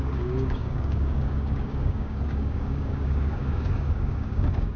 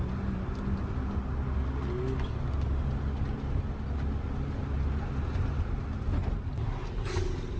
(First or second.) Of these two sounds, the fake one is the first